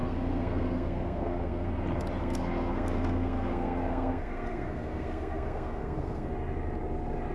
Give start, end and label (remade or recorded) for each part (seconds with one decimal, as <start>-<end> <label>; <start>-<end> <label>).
0.0-1.7 remade; 1.7-2.2 recorded; 2.2-6.3 remade; 6.3-7.3 recorded